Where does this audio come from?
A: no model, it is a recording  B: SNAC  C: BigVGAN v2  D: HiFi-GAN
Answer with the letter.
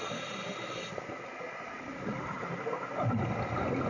A